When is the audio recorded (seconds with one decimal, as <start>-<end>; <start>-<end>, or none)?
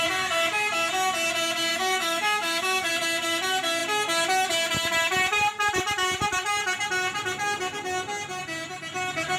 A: 0.0-1.7; 2.9-9.4